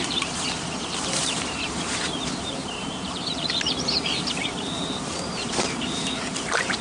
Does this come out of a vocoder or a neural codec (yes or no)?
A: yes